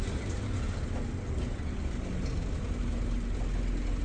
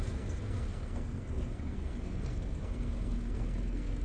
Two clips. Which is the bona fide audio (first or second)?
first